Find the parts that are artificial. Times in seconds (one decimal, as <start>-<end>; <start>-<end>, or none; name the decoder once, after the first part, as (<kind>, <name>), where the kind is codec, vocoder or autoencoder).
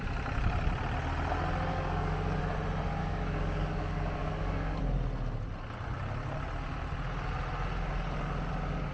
1.7-2.4 (codec, DAC); 3.0-4.8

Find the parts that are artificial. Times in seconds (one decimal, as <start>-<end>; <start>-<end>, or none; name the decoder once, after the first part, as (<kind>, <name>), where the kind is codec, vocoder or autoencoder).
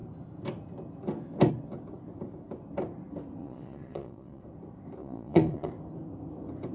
3.4-4.4 (vocoder, Vocos); 5.0-5.7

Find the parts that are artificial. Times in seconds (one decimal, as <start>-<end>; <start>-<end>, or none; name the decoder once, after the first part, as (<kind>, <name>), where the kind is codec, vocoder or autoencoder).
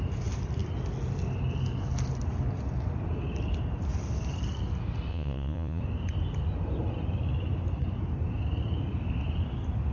5.1-5.8 (vocoder, Vocos)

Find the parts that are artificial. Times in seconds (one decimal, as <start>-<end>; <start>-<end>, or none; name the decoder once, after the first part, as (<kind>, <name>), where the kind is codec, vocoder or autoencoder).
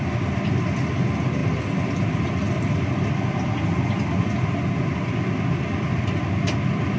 none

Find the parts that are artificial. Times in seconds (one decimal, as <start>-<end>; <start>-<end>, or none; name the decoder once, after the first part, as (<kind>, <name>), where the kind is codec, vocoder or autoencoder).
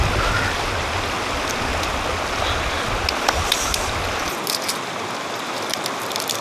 none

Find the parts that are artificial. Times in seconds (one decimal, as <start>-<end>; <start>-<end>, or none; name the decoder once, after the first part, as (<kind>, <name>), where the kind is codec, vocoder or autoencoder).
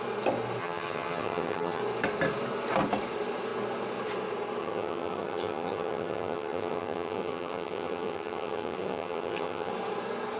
0.6-1.8 (vocoder, HiFi-GAN); 4.6-9.7